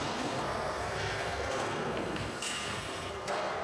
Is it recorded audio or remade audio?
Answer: remade